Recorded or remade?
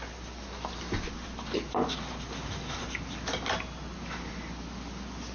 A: recorded